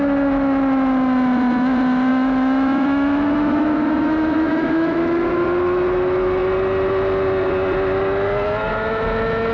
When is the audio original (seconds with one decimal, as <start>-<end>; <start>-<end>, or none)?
0.0-2.1; 5.0-9.5